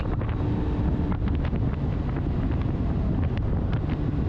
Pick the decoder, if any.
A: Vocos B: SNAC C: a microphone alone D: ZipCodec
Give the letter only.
C